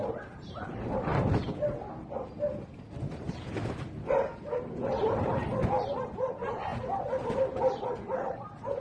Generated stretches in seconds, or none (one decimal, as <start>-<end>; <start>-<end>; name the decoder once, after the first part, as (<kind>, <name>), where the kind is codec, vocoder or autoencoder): 0.0-1.1 (vocoder, BigVGAN v2); 2.9-6.7; 7.8-8.8